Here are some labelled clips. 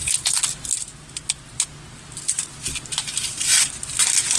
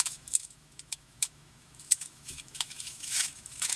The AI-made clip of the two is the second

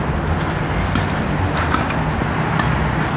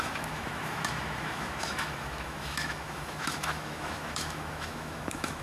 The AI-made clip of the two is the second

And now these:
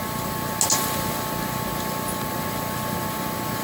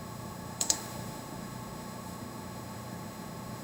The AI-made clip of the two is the second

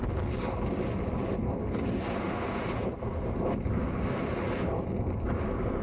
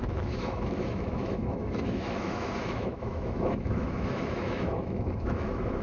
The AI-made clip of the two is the second